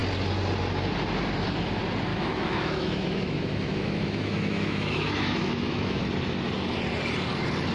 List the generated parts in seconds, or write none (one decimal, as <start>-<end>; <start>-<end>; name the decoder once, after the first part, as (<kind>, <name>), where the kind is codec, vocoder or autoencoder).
2.1-6.0 (autoencoder, DAC-VAE)